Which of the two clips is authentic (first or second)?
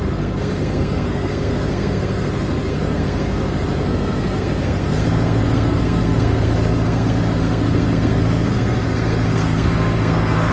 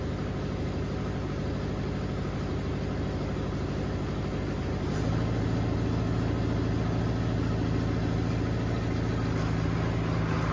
second